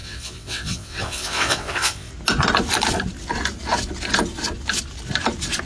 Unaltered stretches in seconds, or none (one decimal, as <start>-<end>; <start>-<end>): 2.1-5.6